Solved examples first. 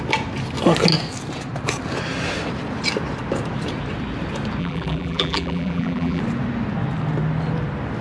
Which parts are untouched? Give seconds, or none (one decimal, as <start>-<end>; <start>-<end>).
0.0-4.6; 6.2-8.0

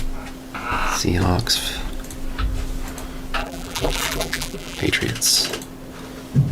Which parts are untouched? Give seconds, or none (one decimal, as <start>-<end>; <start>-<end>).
0.0-3.4; 4.9-6.5

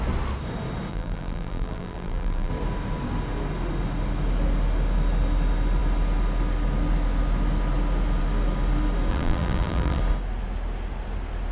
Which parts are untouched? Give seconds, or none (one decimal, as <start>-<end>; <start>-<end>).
0.0-0.9; 2.5-9.1; 10.0-11.5

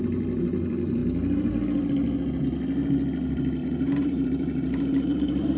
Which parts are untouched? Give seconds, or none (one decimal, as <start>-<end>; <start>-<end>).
0.0-3.6

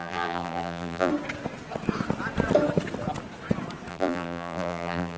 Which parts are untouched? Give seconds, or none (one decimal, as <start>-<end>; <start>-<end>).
1.1-3.9

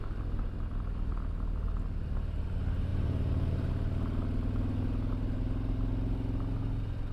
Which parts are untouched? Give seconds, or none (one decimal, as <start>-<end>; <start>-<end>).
0.0-2.9; 3.7-7.1